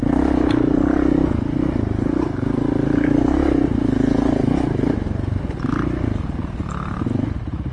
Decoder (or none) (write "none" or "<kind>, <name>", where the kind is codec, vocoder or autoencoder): none